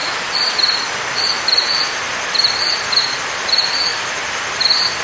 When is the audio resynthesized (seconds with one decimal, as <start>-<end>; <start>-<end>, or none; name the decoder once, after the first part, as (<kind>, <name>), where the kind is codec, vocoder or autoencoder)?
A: 3.0-3.9 (vocoder, BigVGAN v2)